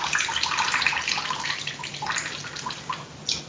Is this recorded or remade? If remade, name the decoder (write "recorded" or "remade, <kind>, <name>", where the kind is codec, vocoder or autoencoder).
recorded